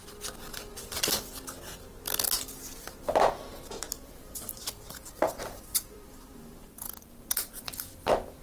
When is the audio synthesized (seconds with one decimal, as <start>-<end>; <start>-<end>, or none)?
3.9-8.0